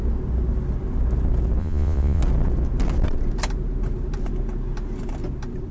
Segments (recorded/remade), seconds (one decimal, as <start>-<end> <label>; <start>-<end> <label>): 0.0-1.6 recorded; 1.6-2.2 remade; 2.2-5.7 recorded